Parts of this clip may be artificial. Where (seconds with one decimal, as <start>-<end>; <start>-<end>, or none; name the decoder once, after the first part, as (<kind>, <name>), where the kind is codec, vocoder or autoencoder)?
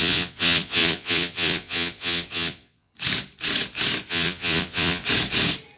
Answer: 0.0-2.9 (vocoder, Vocos); 4.1-5.0